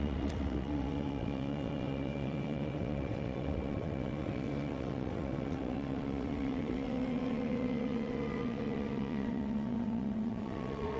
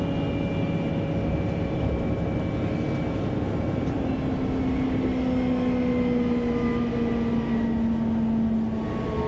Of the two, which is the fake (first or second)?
first